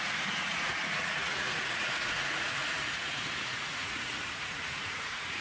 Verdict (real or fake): fake